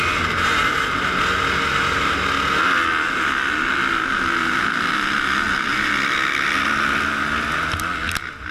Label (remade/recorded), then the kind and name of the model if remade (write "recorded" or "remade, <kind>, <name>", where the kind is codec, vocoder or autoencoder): recorded